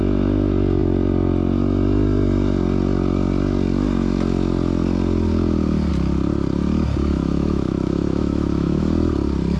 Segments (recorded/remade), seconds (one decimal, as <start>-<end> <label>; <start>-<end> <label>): 0.0-7.1 recorded; 7.1-8.8 remade; 8.8-9.6 recorded